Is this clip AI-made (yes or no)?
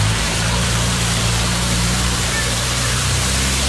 yes